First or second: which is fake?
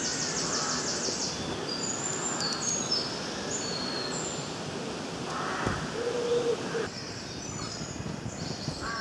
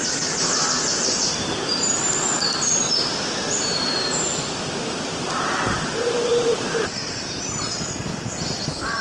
second